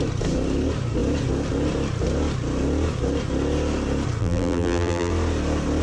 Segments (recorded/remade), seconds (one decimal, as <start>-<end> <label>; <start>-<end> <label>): 0.0-4.2 recorded; 4.2-5.1 remade; 5.1-5.8 recorded